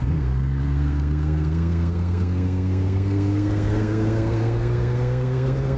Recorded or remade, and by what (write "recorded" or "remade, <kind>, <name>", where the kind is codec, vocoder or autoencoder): remade, codec, SNAC